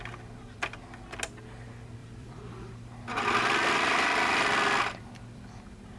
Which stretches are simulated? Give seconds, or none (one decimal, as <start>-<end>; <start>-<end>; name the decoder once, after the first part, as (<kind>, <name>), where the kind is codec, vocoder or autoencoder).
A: 2.0-5.6 (vocoder, BigVGAN v2)